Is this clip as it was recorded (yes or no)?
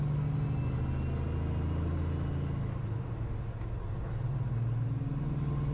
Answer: yes